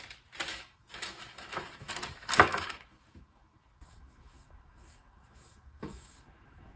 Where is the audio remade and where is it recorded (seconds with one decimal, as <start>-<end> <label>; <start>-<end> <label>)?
0.0-0.5 recorded; 0.5-1.9 remade; 1.9-2.5 recorded; 2.5-6.8 remade